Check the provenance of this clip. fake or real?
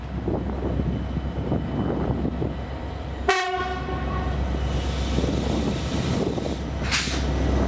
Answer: real